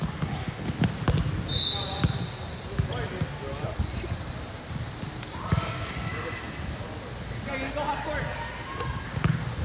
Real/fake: real